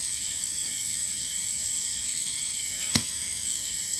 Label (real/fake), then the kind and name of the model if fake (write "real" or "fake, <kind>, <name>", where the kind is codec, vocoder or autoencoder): fake, codec, SNAC